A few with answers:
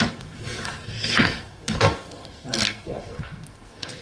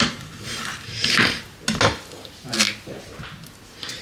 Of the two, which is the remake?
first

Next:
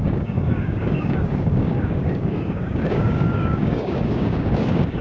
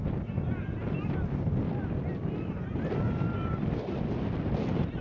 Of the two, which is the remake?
first